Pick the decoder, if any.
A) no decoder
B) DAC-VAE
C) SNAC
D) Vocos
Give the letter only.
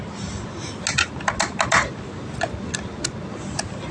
A